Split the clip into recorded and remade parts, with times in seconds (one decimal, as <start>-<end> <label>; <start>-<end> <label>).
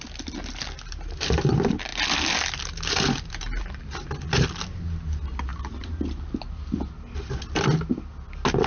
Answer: 0.0-8.7 recorded